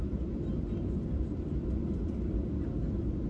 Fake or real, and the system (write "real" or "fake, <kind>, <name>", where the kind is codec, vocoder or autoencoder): fake, vocoder, BigVGAN v2